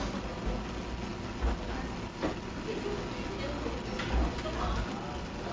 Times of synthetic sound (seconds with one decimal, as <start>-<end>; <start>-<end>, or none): none